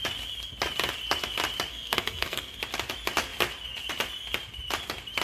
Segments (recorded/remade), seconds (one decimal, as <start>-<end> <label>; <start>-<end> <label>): 0.0-1.7 recorded; 1.7-2.6 remade; 2.6-5.2 recorded